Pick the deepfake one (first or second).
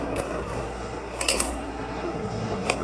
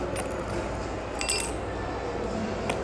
first